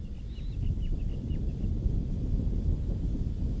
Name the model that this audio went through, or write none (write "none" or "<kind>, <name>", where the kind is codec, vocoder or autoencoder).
none